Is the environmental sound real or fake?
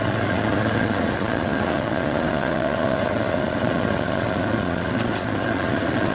fake